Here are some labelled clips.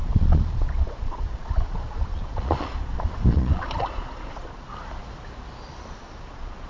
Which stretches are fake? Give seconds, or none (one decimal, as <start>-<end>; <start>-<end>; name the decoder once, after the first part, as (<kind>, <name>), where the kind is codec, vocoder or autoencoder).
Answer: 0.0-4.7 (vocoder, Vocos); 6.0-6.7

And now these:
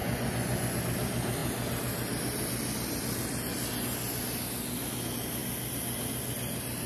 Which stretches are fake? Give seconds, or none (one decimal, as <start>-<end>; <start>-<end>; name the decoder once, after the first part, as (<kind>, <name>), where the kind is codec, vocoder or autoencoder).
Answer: 0.0-0.8 (vocoder, Vocos)

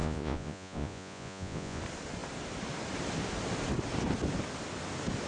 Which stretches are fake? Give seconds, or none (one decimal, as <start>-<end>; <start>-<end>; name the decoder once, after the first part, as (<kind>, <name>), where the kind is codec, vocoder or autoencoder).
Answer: 0.0-1.8 (vocoder, Vocos)

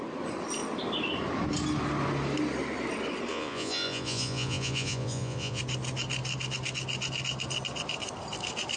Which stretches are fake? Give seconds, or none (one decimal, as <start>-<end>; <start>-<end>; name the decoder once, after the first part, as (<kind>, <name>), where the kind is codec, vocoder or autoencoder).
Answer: 3.3-5.6 (vocoder, Vocos)